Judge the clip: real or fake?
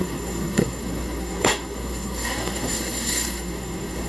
fake